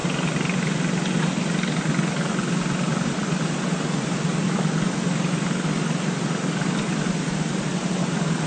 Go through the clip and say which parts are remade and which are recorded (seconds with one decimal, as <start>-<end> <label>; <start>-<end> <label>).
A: 0.0-8.5 recorded